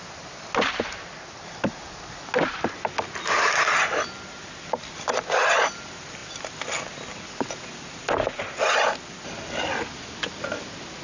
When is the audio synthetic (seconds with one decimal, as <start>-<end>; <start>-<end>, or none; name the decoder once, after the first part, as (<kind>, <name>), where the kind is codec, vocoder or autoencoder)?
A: none